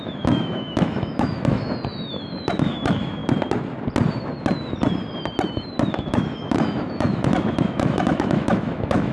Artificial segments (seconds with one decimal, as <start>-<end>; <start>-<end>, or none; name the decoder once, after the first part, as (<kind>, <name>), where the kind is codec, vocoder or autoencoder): 0.0-3.2 (autoencoder, DAC-VAE); 5.9-9.1